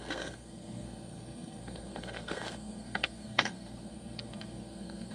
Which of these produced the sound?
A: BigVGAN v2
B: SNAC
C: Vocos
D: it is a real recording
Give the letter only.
B